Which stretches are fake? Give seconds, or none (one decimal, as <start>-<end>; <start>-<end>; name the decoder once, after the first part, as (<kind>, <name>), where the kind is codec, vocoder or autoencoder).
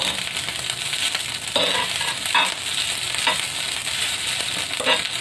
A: 3.8-4.5 (vocoder, BigVGAN v2)